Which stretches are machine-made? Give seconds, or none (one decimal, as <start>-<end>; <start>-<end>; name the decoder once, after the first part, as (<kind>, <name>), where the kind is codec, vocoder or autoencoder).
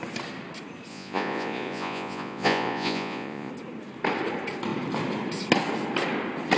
0.9-3.5 (vocoder, Vocos)